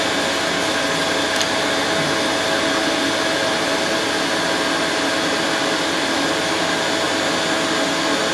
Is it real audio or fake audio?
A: real